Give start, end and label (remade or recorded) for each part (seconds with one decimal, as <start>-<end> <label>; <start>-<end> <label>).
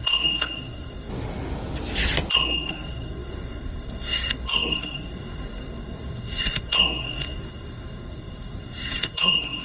0.0-1.1 remade; 1.1-2.3 recorded; 2.3-9.6 remade